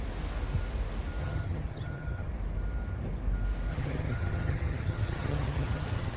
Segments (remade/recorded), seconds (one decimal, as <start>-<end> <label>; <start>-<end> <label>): 0.0-1.2 recorded; 1.2-2.3 remade; 2.3-3.7 recorded; 3.7-6.2 remade